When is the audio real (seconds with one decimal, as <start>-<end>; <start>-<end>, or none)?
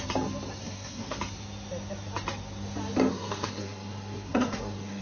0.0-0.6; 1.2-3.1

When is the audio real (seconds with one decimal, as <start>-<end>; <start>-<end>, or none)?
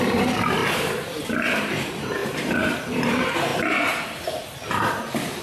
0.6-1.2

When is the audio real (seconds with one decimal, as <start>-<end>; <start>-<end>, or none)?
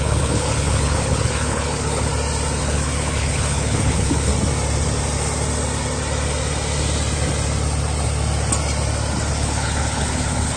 2.1-2.6; 4.3-9.3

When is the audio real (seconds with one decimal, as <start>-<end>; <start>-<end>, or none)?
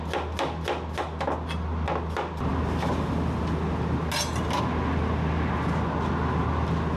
0.0-7.0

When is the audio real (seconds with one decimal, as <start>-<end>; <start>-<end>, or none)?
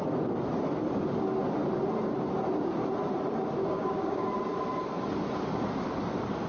0.0-3.6; 4.3-6.5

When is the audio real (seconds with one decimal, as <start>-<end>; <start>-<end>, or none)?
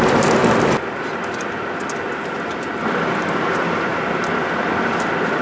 none